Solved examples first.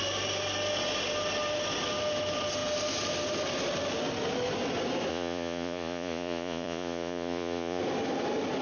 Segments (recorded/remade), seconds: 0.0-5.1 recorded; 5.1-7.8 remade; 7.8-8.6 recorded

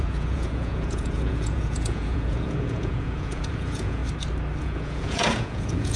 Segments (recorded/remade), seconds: 0.0-4.0 remade; 4.0-4.6 recorded; 4.6-6.0 remade

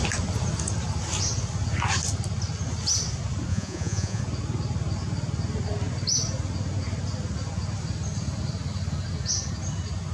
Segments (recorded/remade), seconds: 0.0-3.5 recorded; 3.5-4.2 remade; 4.2-10.1 recorded

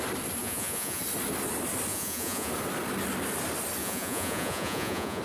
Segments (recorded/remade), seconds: 0.0-0.4 recorded; 0.4-1.0 remade; 1.0-1.9 recorded; 1.9-2.5 remade; 2.5-3.8 recorded; 3.8-5.2 remade

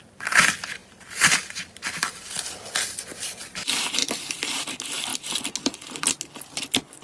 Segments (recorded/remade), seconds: 0.0-7.0 recorded

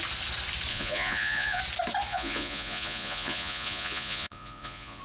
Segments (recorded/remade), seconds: 0.0-0.7 recorded; 0.7-1.6 remade; 1.6-2.1 recorded; 2.1-5.0 remade

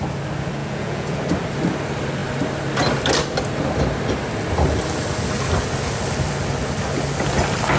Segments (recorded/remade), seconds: 0.0-0.6 recorded; 0.6-1.2 remade; 1.2-7.8 recorded